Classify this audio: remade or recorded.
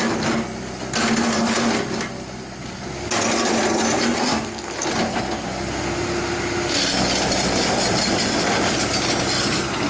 recorded